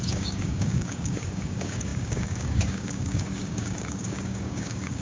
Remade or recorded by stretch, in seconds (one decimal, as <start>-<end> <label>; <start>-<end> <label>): 0.0-5.0 remade

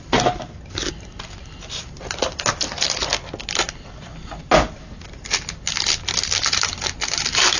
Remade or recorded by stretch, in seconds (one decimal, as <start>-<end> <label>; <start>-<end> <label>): 0.0-7.6 recorded

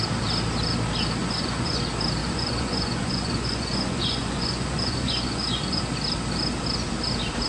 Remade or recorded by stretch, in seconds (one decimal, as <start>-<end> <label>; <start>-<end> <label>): 0.0-1.2 recorded; 1.2-1.8 remade; 1.8-2.2 recorded; 2.2-5.8 remade; 5.8-7.5 recorded

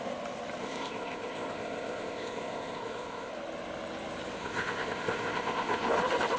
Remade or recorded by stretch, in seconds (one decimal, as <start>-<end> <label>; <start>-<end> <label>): 0.0-0.6 recorded; 0.6-3.3 remade; 3.3-4.4 recorded; 4.4-6.0 remade; 6.0-6.4 recorded

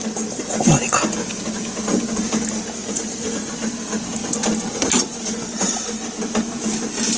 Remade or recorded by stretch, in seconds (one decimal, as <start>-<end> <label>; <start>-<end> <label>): 0.0-2.8 recorded; 2.8-3.5 remade; 3.5-7.2 recorded

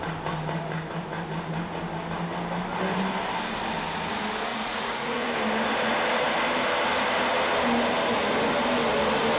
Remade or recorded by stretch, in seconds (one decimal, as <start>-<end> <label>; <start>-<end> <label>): 0.0-4.5 recorded; 4.5-5.3 remade; 5.3-9.4 recorded